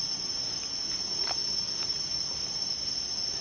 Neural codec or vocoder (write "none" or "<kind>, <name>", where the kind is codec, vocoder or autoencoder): none